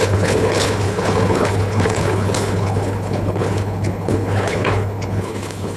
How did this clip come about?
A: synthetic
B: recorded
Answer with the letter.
A